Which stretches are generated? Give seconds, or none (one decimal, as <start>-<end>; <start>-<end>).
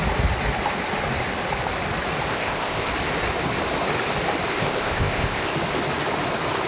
2.3-2.9; 4.5-5.5